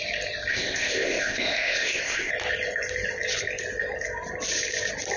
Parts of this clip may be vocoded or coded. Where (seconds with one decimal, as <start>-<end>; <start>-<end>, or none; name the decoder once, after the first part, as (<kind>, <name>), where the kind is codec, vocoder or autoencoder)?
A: 0.5-2.3 (codec, ZipCodec)